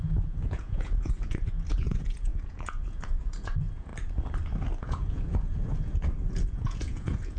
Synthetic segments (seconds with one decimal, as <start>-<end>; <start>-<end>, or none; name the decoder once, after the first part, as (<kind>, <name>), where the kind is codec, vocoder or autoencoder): 0.0-3.9 (vocoder, Vocos); 4.8-7.4